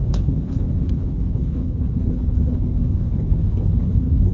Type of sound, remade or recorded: remade